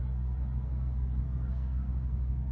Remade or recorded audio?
remade